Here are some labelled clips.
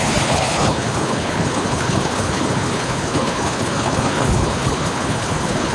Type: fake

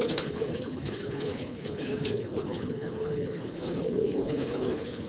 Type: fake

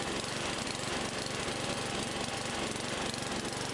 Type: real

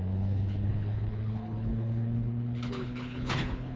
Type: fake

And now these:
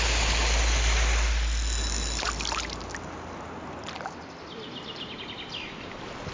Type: real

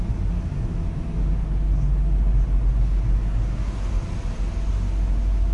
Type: real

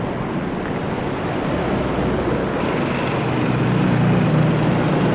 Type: real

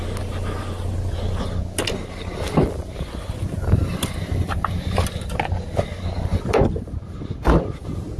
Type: real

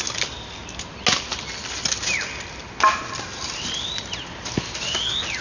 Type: real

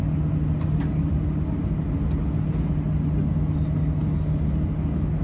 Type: real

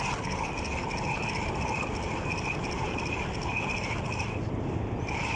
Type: real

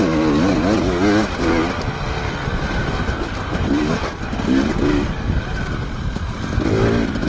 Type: real